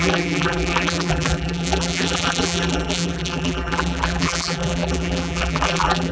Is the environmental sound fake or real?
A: fake